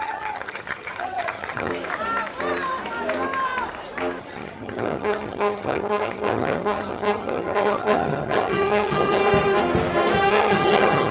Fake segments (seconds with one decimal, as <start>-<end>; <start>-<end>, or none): 0.0-1.7; 4.2-9.2; 10.3-11.1